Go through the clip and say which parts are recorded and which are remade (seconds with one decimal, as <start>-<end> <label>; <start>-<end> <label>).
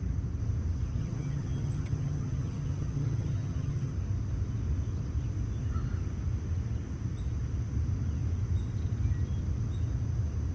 0.0-1.0 recorded; 1.0-3.9 remade; 3.9-10.5 recorded